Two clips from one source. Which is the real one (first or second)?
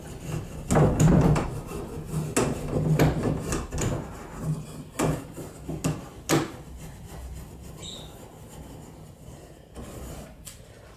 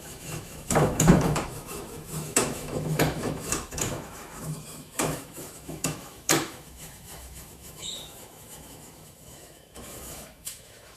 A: first